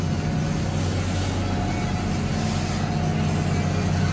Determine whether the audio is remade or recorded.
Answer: recorded